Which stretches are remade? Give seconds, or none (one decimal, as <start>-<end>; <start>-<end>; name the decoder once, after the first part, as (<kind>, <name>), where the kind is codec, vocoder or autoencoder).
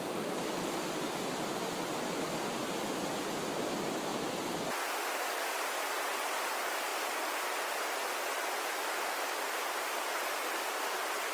none